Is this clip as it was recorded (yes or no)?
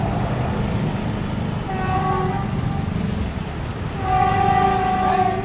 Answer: yes